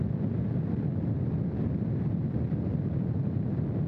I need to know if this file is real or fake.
real